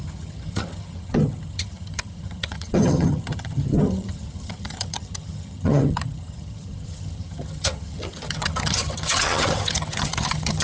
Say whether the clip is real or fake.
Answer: fake